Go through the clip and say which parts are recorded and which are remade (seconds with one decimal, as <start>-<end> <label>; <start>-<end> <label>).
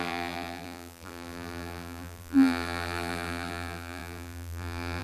0.0-5.0 remade